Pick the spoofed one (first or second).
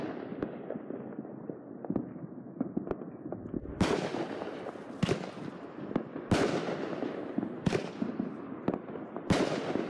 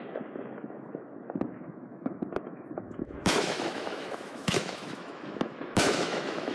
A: second